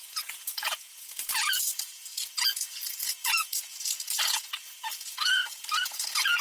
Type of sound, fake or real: fake